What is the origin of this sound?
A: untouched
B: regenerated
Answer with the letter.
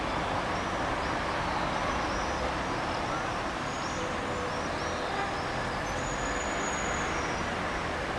A